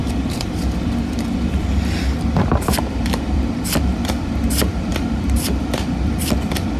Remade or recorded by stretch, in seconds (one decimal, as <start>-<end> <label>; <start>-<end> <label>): 0.0-6.8 remade